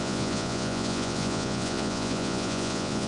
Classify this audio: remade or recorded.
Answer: remade